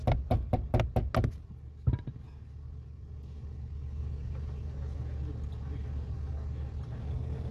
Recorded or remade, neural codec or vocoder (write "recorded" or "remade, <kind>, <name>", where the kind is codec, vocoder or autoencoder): recorded